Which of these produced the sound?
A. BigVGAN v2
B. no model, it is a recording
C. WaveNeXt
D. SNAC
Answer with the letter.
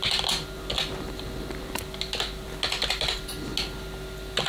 B